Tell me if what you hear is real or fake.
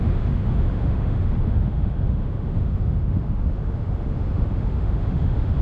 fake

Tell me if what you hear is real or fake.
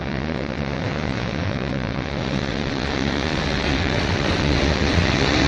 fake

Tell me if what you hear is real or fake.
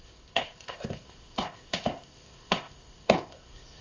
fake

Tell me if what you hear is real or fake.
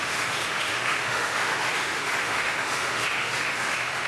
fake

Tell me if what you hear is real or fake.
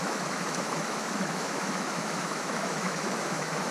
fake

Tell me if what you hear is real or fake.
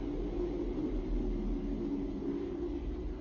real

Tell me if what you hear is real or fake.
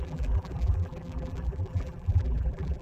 fake